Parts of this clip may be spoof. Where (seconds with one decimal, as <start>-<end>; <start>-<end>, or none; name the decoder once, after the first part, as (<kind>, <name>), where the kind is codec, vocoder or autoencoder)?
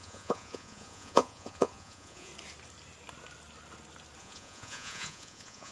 0.0-2.3 (vocoder, Vocos); 4.2-5.7